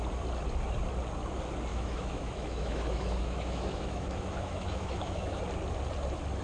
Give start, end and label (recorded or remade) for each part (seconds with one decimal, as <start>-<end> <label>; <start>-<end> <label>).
0.0-1.7 recorded; 1.7-5.4 remade; 5.4-6.4 recorded